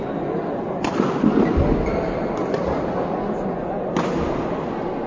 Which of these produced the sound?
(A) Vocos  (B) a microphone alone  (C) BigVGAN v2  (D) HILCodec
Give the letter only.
B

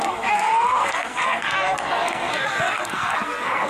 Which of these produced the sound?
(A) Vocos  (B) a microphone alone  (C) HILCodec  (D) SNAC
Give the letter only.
D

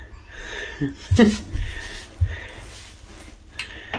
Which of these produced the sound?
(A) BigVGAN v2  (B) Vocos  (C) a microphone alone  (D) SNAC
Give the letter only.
C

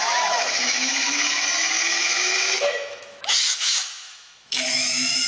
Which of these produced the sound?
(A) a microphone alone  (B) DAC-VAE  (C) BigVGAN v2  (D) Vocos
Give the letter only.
B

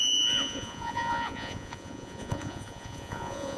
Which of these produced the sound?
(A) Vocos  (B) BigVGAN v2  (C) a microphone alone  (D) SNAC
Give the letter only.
A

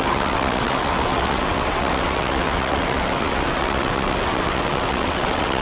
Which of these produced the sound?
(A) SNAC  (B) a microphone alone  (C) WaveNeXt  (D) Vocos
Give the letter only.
C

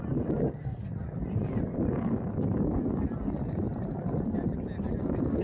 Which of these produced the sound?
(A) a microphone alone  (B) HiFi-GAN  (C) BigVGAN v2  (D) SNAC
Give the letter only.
A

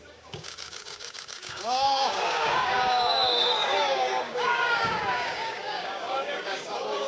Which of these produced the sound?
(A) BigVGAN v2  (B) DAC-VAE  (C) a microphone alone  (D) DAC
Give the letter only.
D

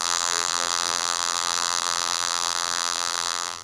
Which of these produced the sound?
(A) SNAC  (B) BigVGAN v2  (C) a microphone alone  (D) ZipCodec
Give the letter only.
B